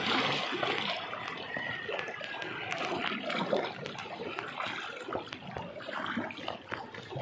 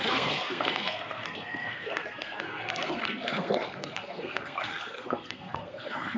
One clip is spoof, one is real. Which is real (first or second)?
first